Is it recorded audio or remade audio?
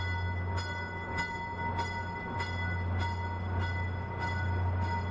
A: recorded